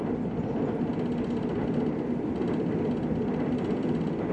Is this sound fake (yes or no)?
no